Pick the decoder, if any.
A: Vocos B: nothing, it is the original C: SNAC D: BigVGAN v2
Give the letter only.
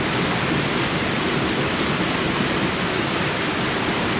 B